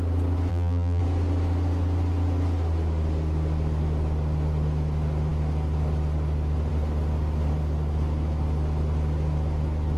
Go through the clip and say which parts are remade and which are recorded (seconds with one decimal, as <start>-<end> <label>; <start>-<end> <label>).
0.0-0.5 recorded; 0.5-1.0 remade; 1.0-10.0 recorded